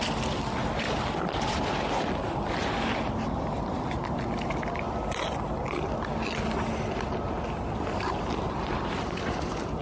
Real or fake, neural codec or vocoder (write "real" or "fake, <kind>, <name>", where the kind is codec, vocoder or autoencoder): real